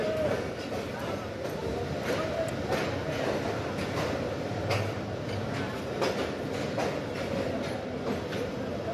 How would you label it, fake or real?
real